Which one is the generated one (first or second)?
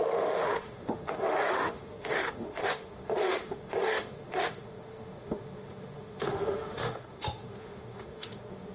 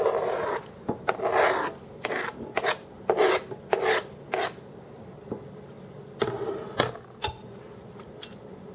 first